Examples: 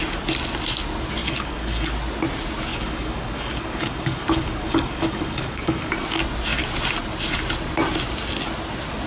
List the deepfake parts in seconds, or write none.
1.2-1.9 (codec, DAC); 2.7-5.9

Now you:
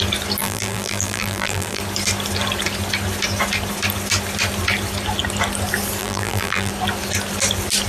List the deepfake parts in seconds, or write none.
0.4-1.8 (vocoder, BigVGAN v2); 6.0-6.7

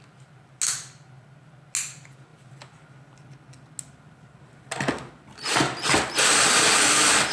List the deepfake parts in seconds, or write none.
none

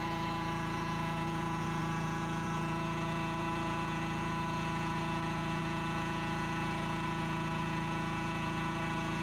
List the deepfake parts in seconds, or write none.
0.0-9.2 (vocoder, Vocos)